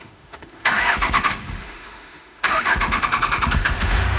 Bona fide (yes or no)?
no